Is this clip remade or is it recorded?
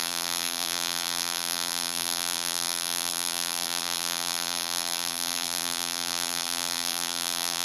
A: remade